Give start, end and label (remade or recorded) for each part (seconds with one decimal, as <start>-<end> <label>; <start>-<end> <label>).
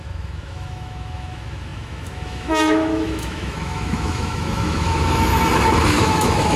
0.0-5.3 remade; 5.3-6.0 recorded; 6.0-6.6 remade